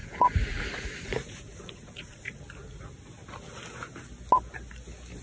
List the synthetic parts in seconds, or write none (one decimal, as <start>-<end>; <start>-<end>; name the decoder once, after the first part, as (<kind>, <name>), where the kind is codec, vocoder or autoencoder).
0.0-2.4 (vocoder, Vocos)